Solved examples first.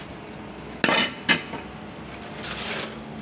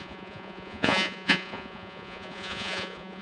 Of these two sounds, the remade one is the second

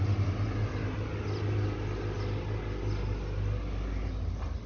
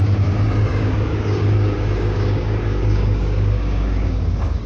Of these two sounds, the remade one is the second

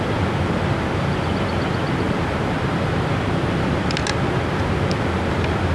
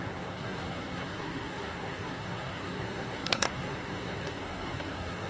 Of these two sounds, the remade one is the second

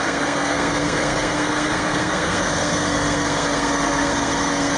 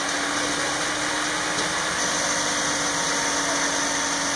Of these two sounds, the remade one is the first